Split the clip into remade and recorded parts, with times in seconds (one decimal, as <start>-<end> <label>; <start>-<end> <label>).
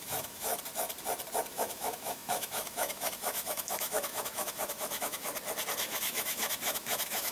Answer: 0.0-0.5 remade; 0.5-1.5 recorded; 1.5-5.3 remade; 5.3-5.8 recorded; 5.8-7.3 remade